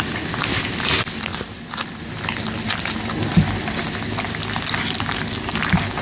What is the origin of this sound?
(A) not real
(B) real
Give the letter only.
B